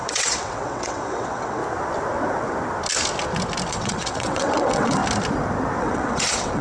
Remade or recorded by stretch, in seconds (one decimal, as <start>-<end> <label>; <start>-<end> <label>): 0.0-1.6 remade; 1.6-3.7 recorded; 3.7-5.0 remade; 5.0-5.8 recorded; 5.8-6.6 remade

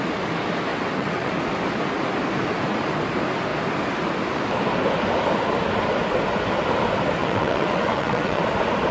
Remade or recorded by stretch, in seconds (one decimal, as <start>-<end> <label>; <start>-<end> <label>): 0.0-0.7 recorded; 0.7-1.3 remade; 1.3-7.2 recorded; 7.2-8.4 remade; 8.4-8.9 recorded

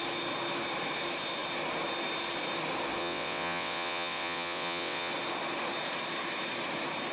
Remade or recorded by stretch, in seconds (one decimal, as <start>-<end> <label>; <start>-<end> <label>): 0.0-3.0 recorded; 3.0-5.1 remade; 5.1-7.1 recorded

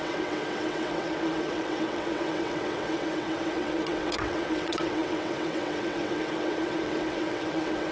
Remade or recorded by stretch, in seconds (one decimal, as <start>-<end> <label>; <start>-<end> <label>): 0.0-7.9 remade